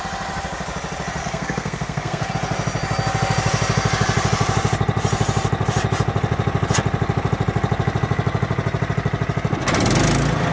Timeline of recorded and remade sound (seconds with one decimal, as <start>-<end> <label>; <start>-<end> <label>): 0.0-1.2 recorded; 1.2-2.3 remade; 2.3-10.5 recorded